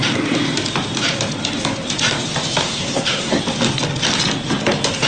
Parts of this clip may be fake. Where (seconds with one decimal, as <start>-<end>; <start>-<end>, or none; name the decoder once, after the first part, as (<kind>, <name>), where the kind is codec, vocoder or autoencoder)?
2.6-3.4 (codec, SNAC)